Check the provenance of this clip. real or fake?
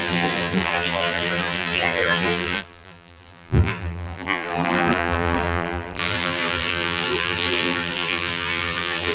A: fake